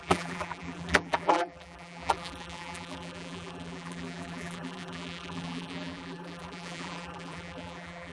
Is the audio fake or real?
fake